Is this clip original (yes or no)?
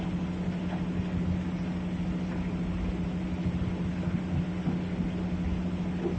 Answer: yes